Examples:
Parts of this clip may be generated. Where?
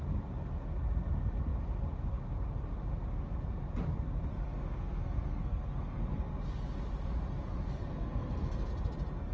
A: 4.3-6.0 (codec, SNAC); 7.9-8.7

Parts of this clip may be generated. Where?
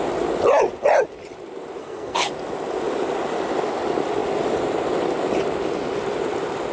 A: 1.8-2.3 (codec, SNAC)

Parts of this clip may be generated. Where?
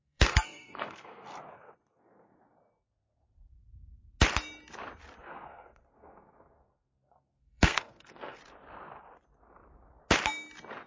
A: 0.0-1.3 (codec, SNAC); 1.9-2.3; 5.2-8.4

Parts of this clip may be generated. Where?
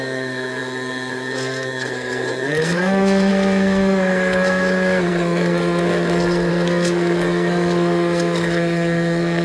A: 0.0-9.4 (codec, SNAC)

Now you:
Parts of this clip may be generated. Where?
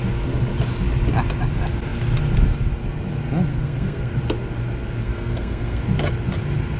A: 3.5-4.1 (codec, SNAC); 5.0-5.8